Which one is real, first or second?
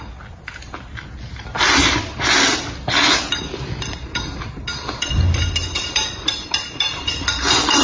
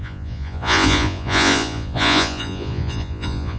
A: first